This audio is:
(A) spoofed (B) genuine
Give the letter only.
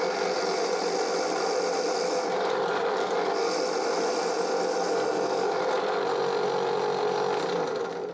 B